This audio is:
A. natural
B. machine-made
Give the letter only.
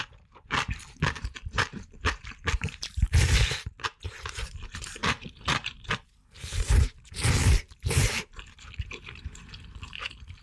B